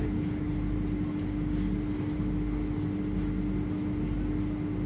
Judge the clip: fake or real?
real